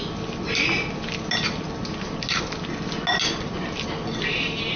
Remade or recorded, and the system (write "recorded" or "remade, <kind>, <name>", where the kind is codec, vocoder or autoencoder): recorded